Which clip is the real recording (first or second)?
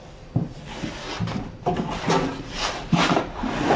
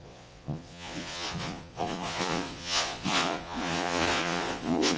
first